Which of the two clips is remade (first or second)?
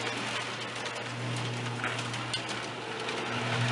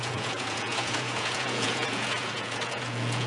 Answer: second